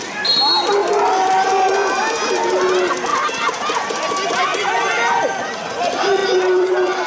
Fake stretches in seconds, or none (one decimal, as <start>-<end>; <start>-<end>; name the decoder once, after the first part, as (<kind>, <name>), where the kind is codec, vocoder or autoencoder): 6.2-7.1 (vocoder, BigVGAN v2)